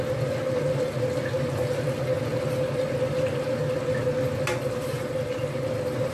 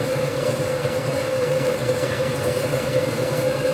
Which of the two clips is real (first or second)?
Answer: first